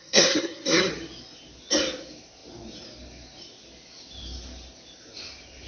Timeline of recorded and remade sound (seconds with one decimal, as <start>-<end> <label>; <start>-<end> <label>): 0.0-0.9 remade; 0.9-5.7 recorded